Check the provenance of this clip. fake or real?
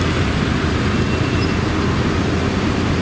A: real